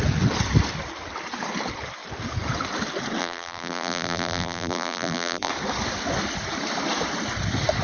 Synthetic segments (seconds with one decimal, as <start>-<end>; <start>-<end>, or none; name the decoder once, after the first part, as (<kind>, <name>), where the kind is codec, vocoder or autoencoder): 3.2-5.5 (vocoder, BigVGAN v2)